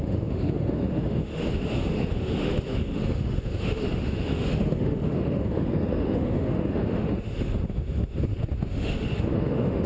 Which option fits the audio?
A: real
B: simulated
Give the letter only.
B